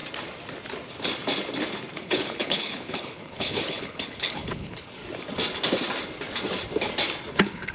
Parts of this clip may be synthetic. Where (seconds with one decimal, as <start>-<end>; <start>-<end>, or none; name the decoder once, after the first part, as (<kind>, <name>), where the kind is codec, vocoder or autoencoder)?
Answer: 2.0-5.0 (codec, HILCodec); 7.3-7.7